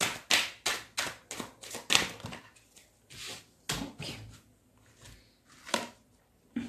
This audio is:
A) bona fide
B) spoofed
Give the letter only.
A